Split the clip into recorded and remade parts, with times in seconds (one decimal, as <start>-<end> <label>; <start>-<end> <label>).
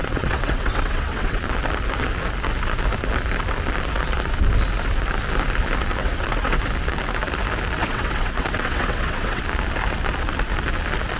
0.0-1.4 remade; 1.4-6.0 recorded; 6.0-6.6 remade; 6.6-7.8 recorded; 7.8-9.4 remade; 9.4-11.2 recorded